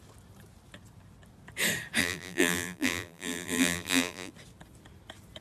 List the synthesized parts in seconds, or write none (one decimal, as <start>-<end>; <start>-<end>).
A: 2.0-4.3